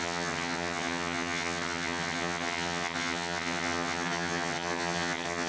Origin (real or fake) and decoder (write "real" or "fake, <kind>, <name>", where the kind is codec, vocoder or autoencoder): fake, vocoder, HiFi-GAN